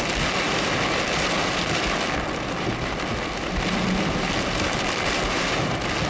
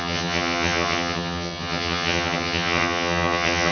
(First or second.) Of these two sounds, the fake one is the second